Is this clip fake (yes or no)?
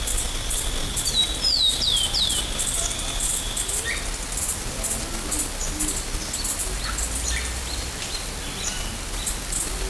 no